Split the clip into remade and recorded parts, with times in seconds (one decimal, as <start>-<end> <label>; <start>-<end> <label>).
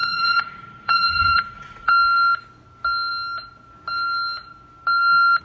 0.0-1.9 remade; 1.9-5.4 recorded